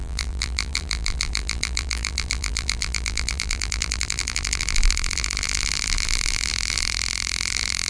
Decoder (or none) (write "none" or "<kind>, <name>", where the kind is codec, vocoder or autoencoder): vocoder, BigVGAN v2